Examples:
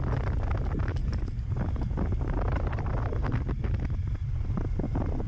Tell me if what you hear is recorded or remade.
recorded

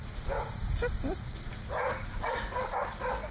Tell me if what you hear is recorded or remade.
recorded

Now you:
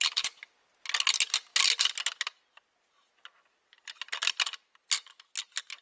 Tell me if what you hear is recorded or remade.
recorded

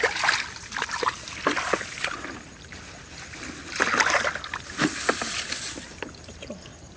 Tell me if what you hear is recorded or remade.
recorded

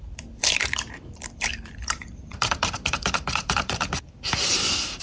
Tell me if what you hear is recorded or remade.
remade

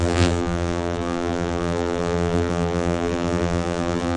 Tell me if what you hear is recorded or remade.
remade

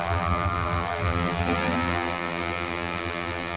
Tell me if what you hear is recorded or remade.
remade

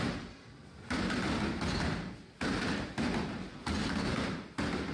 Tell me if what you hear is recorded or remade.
recorded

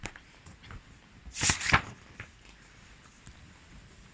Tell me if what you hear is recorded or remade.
recorded